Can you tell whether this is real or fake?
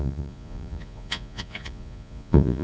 fake